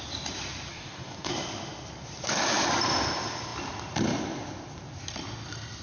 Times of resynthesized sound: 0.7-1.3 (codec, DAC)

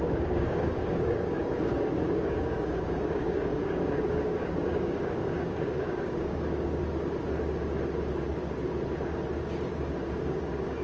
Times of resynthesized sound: 0.0-6.8 (codec, DAC); 10.2-10.8

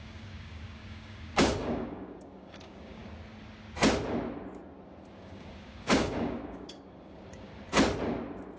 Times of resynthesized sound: 0.0-3.0 (codec, DAC); 5.1-7.5